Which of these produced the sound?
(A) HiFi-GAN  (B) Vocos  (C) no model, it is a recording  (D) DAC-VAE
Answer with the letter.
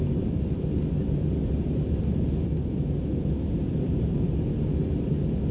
C